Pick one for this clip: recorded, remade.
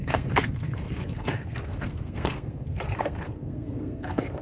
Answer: remade